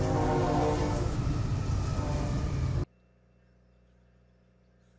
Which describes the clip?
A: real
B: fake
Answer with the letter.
A